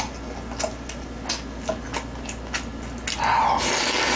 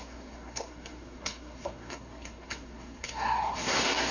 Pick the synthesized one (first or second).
second